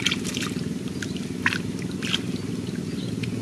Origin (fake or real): real